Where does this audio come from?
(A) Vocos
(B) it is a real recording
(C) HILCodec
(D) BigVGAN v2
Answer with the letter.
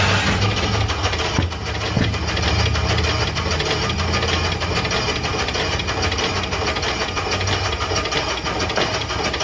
B